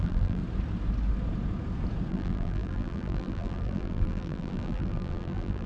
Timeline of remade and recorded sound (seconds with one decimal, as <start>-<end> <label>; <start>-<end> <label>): 0.0-0.4 remade; 0.4-2.1 recorded; 2.1-5.7 remade